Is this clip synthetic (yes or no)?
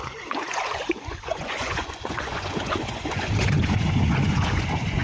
yes